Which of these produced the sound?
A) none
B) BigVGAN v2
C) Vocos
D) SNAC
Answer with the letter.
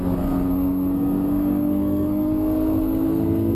D